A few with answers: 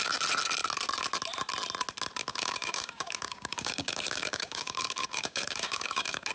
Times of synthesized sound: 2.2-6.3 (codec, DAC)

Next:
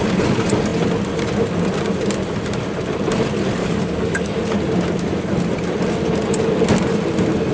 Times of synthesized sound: 3.6-4.4 (codec, DAC)

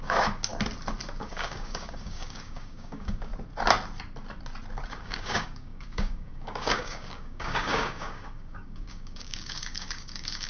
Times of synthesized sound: 0.0-0.5 (codec, DAC); 1.2-3.3; 5.0-10.5

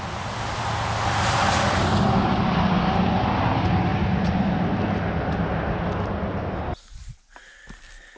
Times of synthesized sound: none